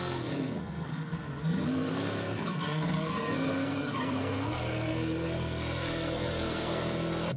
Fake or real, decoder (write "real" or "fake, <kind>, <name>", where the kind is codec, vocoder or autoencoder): fake, codec, SNAC